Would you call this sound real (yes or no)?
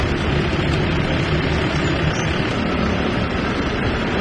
no